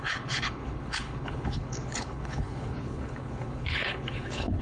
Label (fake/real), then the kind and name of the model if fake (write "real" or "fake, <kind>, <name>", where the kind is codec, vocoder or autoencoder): fake, codec, HILCodec